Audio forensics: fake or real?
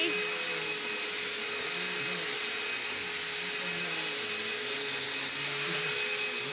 real